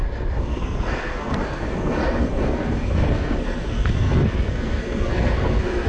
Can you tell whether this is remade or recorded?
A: remade